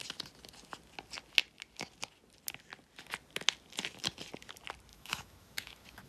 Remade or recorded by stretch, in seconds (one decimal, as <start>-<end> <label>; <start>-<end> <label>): 0.0-4.9 recorded; 4.9-6.1 remade